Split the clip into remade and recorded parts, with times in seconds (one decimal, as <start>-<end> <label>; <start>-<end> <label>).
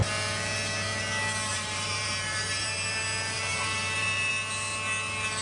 0.0-1.5 recorded; 1.5-4.3 remade; 4.3-5.4 recorded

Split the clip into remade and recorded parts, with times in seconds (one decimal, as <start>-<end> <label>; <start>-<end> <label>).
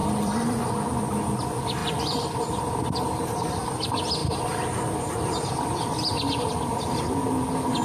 0.0-0.9 remade; 0.9-1.8 recorded; 1.8-2.6 remade; 2.6-4.2 recorded; 4.2-5.1 remade; 5.1-7.8 recorded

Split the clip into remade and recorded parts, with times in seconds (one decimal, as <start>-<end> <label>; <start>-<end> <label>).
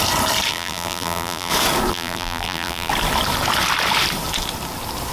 0.0-0.5 recorded; 0.5-1.5 remade; 1.5-1.9 recorded; 1.9-2.9 remade; 2.9-5.1 recorded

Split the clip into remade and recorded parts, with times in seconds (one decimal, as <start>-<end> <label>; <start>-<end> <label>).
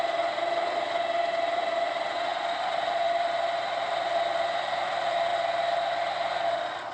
0.0-2.3 remade; 2.3-2.9 recorded; 2.9-5.3 remade; 5.3-6.3 recorded; 6.3-6.9 remade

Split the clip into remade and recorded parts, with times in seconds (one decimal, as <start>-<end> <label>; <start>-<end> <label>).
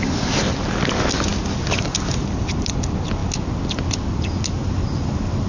0.0-3.2 remade; 3.2-5.5 recorded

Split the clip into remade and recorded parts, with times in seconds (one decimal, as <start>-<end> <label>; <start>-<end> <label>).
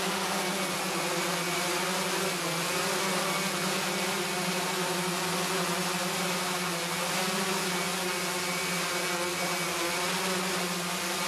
0.0-11.3 recorded